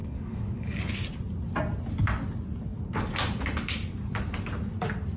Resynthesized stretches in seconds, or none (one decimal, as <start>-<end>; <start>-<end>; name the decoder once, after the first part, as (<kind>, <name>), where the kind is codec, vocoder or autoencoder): 0.0-0.9 (codec, DAC)